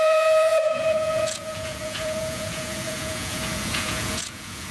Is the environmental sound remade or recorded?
remade